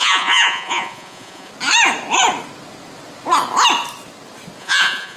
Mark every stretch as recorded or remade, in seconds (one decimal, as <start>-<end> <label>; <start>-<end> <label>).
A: 0.0-1.5 remade; 1.5-4.6 recorded; 4.6-5.2 remade